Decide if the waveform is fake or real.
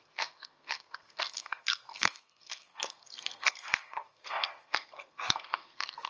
fake